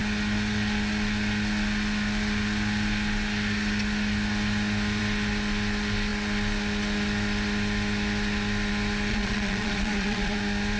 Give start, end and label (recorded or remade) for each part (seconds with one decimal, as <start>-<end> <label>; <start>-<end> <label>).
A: 0.0-9.1 recorded; 9.1-10.4 remade; 10.4-10.8 recorded